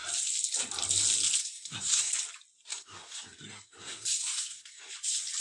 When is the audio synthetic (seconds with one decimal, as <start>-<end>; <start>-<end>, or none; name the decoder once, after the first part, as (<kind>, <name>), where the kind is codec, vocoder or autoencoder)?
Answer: 1.4-2.1 (codec, SNAC); 2.7-4.9